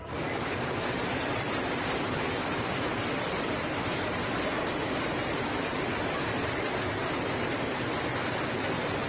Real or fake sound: fake